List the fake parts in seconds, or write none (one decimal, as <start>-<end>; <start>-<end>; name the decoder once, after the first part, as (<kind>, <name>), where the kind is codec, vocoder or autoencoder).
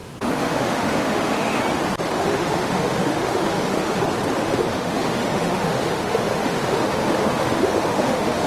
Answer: 0.0-1.6 (autoencoder, DAC-VAE); 2.1-4.0; 4.4-8.5